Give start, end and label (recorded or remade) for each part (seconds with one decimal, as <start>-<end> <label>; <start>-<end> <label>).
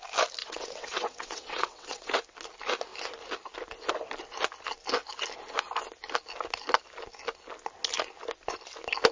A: 0.0-0.4 recorded; 0.4-2.2 remade; 2.2-9.1 recorded